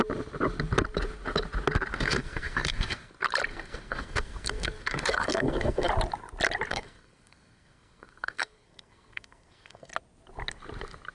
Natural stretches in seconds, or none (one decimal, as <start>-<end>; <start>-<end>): 0.0-1.9; 3.1-3.5; 5.9-6.7; 9.9-11.1